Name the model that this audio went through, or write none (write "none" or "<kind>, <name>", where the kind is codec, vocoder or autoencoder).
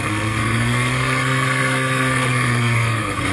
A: codec, SNAC